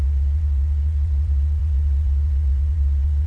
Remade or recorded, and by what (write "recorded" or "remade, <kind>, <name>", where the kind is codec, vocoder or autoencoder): remade, vocoder, WaveNeXt